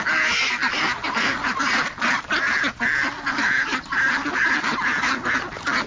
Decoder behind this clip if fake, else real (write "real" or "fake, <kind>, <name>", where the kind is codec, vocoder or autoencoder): real